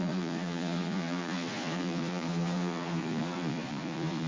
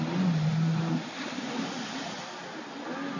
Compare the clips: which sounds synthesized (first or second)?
first